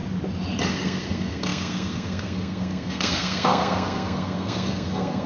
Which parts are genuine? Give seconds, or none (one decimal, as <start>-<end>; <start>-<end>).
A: 0.0-0.7